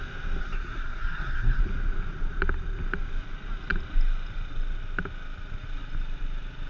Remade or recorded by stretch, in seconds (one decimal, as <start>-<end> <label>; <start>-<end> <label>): 0.0-0.4 recorded; 0.4-1.6 remade; 1.6-6.7 recorded